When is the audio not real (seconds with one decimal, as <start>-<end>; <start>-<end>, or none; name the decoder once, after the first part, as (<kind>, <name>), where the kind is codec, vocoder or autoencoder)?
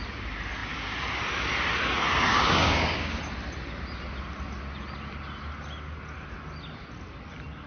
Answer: 2.3-3.2 (codec, DAC)